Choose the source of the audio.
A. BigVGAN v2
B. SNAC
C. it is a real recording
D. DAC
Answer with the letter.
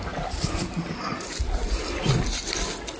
C